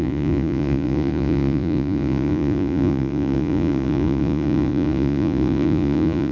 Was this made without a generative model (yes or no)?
no